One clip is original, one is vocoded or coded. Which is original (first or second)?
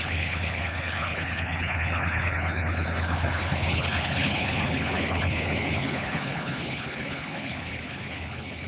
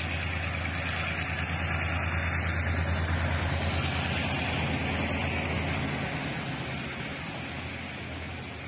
second